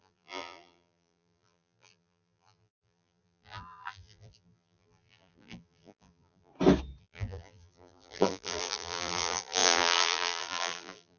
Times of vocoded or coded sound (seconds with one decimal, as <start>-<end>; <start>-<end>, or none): 0.0-6.5; 7.0-11.2